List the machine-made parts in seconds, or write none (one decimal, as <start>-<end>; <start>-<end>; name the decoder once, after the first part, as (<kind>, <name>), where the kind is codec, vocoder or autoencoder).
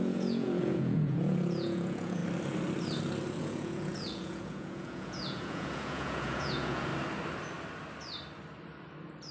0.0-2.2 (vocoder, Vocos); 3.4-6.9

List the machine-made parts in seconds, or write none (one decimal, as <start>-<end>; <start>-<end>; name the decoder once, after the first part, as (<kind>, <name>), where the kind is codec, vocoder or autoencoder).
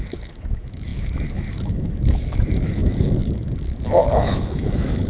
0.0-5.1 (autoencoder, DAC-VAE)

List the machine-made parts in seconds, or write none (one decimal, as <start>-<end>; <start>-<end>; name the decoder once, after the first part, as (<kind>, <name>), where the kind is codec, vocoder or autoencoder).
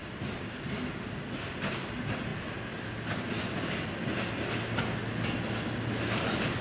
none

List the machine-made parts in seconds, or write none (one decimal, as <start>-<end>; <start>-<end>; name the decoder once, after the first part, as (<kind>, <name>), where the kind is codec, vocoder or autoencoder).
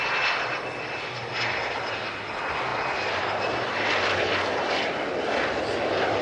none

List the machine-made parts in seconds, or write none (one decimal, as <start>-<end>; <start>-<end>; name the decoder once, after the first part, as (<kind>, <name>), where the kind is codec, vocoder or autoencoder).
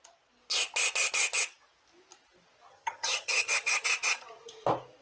2.7-3.8 (vocoder, HiFi-GAN)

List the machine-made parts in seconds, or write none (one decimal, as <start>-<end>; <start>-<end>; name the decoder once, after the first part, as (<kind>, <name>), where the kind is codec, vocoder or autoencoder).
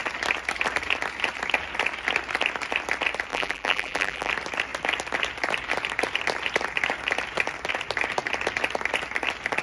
3.3-4.3 (vocoder, BigVGAN v2)